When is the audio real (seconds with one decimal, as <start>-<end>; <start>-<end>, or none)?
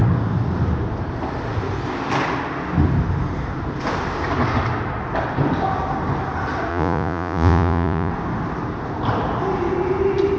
0.0-6.7; 8.1-10.4